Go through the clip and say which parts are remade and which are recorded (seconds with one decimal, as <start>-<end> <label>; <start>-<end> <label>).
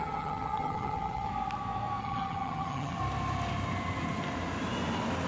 0.0-1.3 remade; 1.3-2.0 recorded; 2.0-3.0 remade; 3.0-5.3 recorded